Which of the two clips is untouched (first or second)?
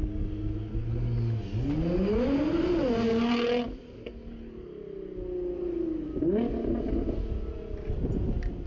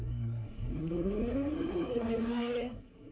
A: first